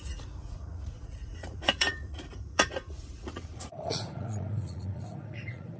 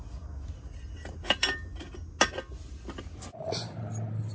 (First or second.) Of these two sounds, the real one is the second